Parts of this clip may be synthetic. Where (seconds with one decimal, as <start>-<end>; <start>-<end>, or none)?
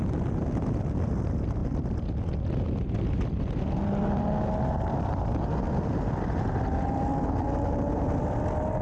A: none